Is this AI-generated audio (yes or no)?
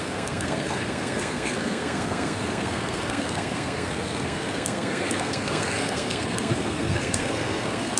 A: yes